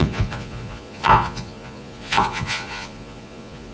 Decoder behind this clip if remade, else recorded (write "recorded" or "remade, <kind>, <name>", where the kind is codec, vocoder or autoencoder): remade, vocoder, Vocos